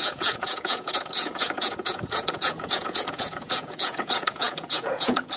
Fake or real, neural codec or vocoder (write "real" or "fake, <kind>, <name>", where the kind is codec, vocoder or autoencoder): fake, vocoder, Vocos